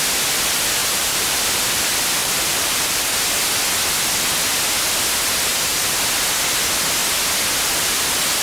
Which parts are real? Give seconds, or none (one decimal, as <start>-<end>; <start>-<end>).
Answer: 0.0-0.8; 1.4-2.2; 3.2-5.5; 6.0-8.4